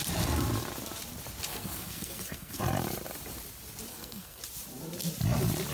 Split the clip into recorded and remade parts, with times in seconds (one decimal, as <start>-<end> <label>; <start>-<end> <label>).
0.0-1.5 recorded; 1.5-2.6 remade; 2.6-3.9 recorded; 3.9-4.4 remade; 4.4-5.7 recorded